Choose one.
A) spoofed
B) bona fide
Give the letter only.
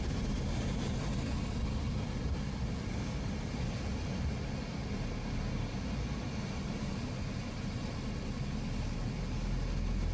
B